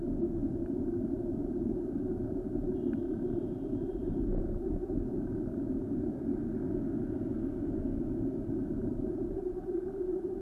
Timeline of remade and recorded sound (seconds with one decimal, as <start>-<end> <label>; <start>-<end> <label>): 0.0-6.4 remade; 6.4-8.6 recorded; 8.6-10.4 remade